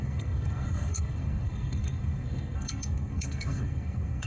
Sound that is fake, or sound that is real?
fake